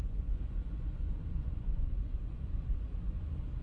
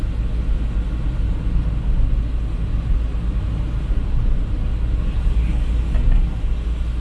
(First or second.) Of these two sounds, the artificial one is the first